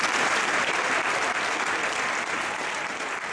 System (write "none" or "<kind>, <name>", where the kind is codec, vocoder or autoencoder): vocoder, BigVGAN v2